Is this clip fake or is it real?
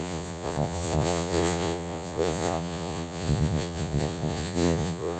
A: fake